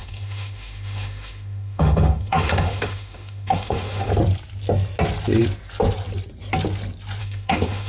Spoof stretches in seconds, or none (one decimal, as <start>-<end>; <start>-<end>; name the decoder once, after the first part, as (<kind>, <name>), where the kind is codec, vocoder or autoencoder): 0.0-4.1 (autoencoder, DAC-VAE); 7.2-7.9